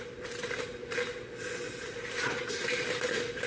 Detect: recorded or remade recorded